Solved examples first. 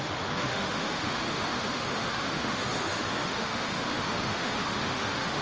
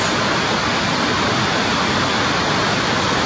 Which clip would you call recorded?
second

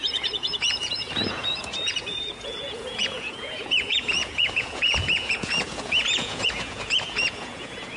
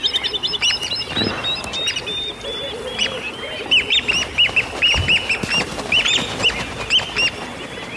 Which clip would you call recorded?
second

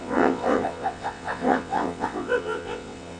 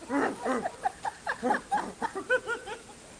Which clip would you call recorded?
second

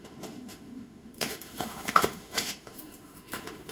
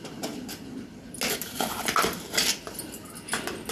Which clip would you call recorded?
second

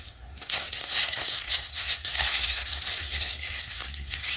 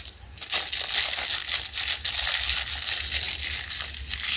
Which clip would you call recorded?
second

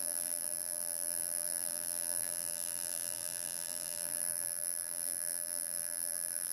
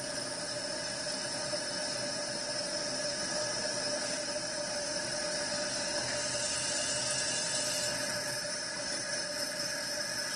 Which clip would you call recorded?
second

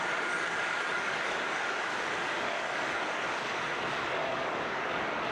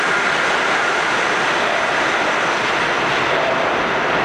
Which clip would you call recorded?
second